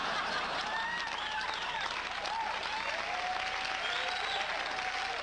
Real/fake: real